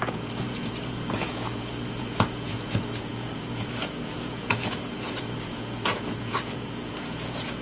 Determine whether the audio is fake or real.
fake